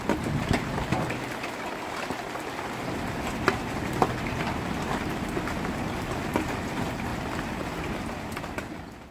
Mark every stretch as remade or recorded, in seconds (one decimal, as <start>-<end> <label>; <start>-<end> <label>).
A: 0.0-9.1 recorded